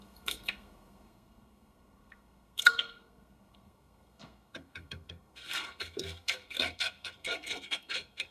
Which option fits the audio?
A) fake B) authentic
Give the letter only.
A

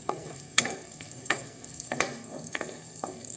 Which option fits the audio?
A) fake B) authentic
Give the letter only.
A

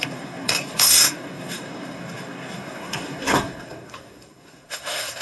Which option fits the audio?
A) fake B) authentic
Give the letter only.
A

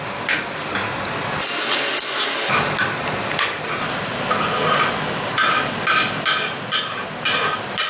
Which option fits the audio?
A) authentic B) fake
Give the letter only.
A